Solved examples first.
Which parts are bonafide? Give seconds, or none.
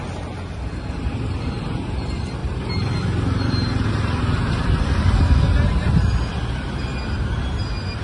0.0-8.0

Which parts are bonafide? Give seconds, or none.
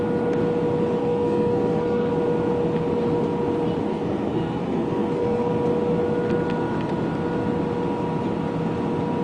0.0-1.0; 2.1-3.9; 5.5-9.2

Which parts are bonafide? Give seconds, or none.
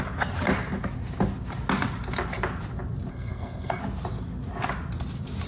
0.0-3.1; 3.8-5.5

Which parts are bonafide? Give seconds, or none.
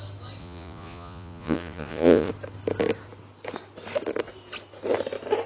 0.0-0.4; 2.3-5.5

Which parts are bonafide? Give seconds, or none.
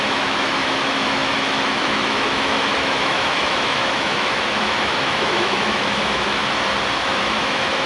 6.4-7.0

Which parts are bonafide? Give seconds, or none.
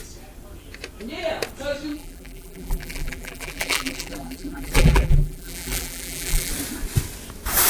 0.0-1.9; 6.5-7.7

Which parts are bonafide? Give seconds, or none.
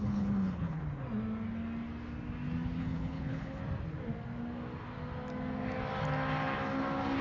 0.8-2.8; 3.6-7.2